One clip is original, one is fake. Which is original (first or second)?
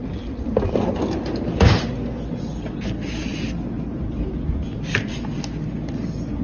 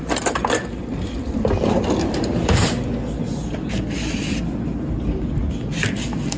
first